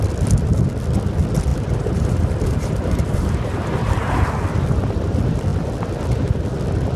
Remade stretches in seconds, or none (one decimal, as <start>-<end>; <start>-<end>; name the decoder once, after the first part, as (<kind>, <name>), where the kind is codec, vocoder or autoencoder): 1.5-4.3 (vocoder, BigVGAN v2)